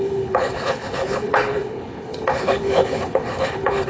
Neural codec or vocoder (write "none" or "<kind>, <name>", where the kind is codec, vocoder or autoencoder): codec, HILCodec